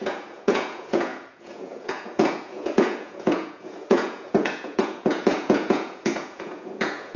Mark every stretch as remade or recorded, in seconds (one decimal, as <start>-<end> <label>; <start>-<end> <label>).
0.0-7.2 remade